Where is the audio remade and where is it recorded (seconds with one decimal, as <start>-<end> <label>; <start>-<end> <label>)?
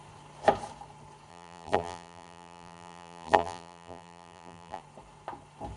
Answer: 0.0-1.3 recorded; 1.3-4.8 remade; 4.8-5.8 recorded